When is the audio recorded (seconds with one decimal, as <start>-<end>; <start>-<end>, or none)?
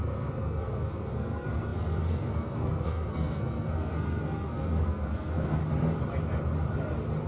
5.6-7.3